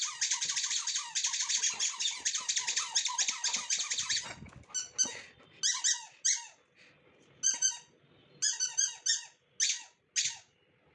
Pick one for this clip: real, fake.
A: real